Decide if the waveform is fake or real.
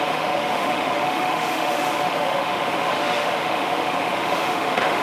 fake